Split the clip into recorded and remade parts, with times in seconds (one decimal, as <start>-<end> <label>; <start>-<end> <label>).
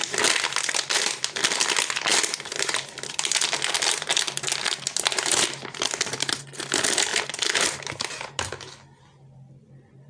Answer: 0.0-10.1 recorded